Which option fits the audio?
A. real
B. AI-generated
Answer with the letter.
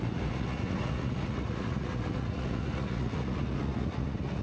B